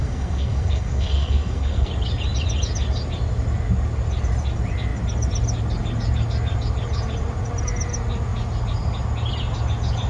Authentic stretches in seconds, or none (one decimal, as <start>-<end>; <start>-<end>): 1.9-10.1